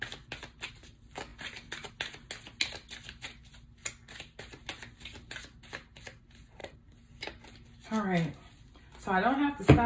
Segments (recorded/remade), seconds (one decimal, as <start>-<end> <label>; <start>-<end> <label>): 0.0-9.9 recorded